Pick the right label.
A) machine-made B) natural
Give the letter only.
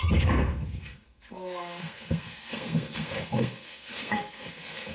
A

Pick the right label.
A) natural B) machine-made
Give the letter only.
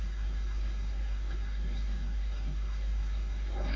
B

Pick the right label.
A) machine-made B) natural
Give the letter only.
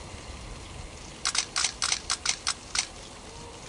B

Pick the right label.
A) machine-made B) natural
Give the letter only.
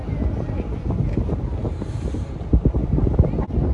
B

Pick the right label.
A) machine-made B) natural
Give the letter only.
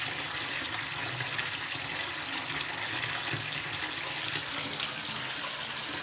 B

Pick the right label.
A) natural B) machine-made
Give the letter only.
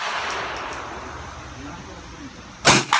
A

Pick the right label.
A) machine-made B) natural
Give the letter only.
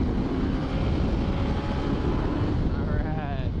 B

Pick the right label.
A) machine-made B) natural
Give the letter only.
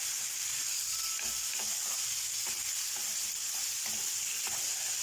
B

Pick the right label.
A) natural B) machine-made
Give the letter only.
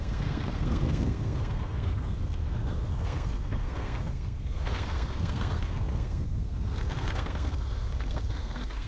B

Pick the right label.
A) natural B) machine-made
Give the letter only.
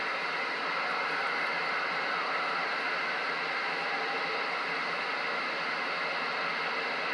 A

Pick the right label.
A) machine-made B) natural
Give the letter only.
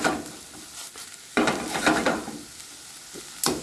B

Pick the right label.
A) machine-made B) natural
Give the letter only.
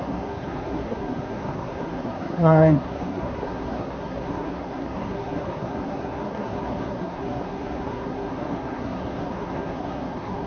A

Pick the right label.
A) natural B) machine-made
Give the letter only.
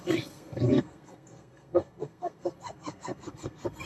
B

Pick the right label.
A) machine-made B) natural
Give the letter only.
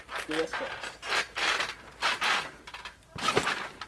B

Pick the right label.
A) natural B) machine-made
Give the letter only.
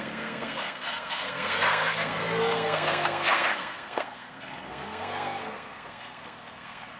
B